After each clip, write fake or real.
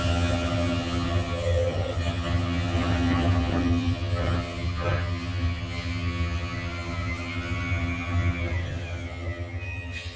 fake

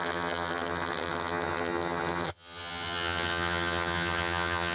fake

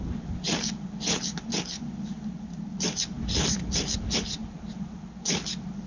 real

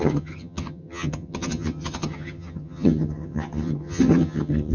fake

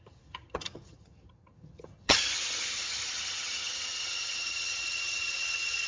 fake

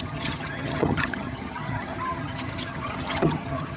fake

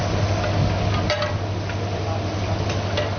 real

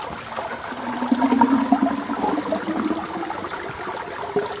real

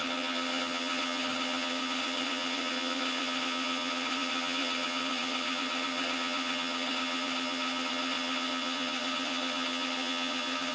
fake